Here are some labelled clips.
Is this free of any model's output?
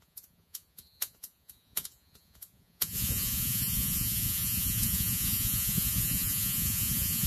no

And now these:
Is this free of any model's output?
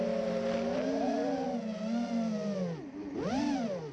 yes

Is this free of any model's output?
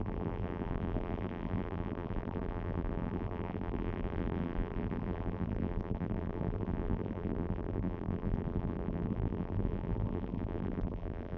no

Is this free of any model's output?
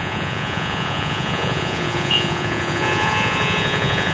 no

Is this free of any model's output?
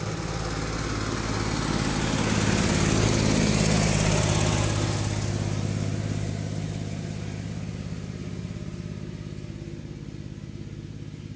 yes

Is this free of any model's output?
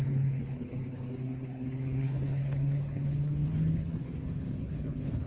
no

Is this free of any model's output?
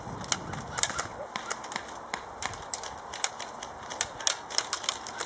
yes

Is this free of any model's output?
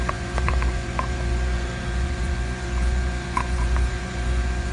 no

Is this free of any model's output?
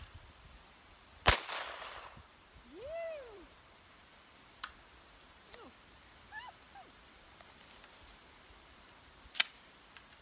no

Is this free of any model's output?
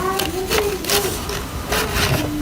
yes